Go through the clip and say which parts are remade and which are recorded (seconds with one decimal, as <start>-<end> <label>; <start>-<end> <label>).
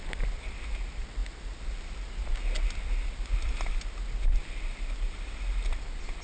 0.0-6.2 recorded